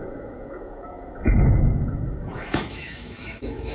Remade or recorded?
remade